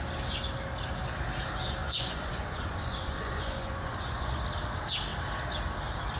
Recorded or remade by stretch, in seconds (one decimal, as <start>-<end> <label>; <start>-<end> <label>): 0.0-1.8 recorded; 1.8-4.4 remade; 4.4-6.2 recorded